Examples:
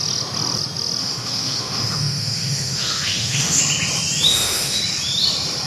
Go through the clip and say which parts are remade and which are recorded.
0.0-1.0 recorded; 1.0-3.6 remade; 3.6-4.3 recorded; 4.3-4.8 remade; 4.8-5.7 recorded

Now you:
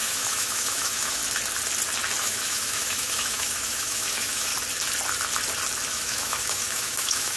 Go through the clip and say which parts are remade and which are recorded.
0.0-1.2 remade; 1.2-2.2 recorded; 2.2-4.5 remade; 4.5-5.9 recorded; 5.9-7.4 remade

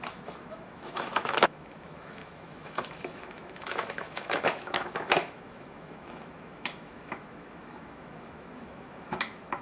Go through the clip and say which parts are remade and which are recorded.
0.0-9.6 remade

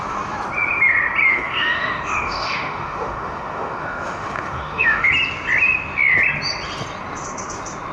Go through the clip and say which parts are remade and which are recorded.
0.0-1.3 recorded; 1.3-5.1 remade; 5.1-7.9 recorded

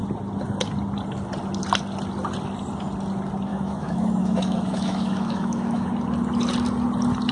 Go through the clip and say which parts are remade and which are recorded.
0.0-3.5 recorded; 3.5-5.9 remade; 5.9-7.3 recorded

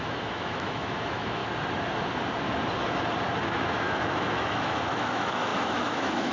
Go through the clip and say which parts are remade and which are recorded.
0.0-1.4 remade; 1.4-3.4 recorded; 3.4-6.3 remade